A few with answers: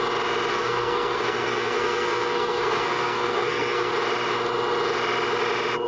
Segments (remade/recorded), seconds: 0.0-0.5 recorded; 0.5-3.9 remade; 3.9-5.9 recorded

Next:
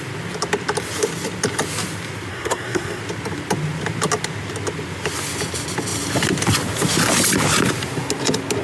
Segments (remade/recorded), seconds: 0.0-2.3 recorded; 2.3-3.0 remade; 3.0-8.6 recorded

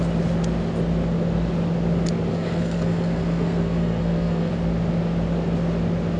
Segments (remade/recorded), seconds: 0.0-2.3 recorded; 2.3-4.5 remade; 4.5-6.2 recorded

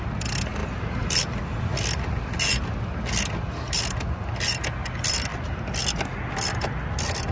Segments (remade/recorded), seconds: 0.0-7.3 recorded

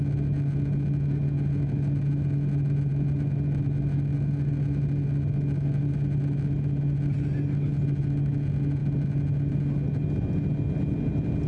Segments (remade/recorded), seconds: 0.0-11.5 recorded